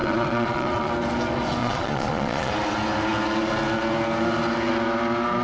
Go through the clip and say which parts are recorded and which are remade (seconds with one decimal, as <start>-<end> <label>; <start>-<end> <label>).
0.0-0.9 remade; 0.9-1.6 recorded; 1.6-2.5 remade; 2.5-5.4 recorded